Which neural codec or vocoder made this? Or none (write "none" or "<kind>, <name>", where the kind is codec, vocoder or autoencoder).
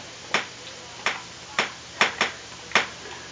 none